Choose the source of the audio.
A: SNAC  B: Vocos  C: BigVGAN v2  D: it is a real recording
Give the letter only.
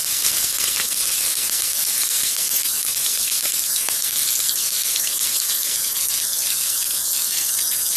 A